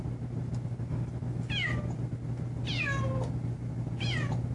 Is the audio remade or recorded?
recorded